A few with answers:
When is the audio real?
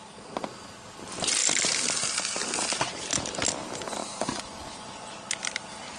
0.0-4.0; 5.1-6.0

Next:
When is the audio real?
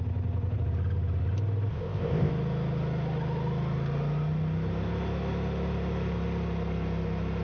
0.0-1.7; 2.3-7.4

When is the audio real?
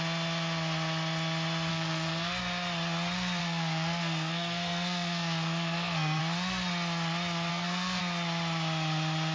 0.0-1.7; 2.4-3.4; 6.2-7.5; 8.0-9.3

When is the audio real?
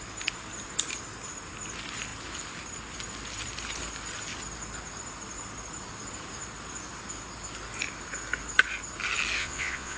0.0-9.4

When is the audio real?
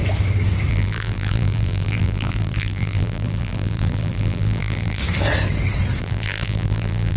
0.0-0.7; 5.0-6.0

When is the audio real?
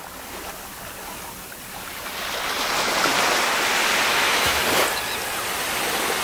0.0-4.1; 4.6-6.2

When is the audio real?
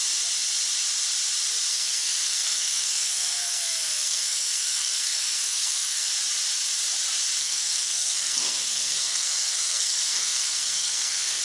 0.0-1.7; 6.1-7.4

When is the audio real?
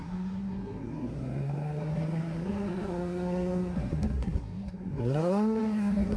none